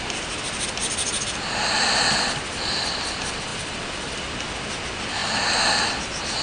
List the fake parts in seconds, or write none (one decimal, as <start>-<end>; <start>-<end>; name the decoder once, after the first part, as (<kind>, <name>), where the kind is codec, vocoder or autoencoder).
3.5-4.1 (vocoder, BigVGAN v2)